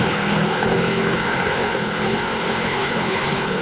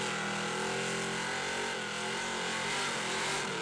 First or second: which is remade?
first